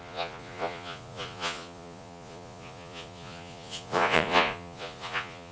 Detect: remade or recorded remade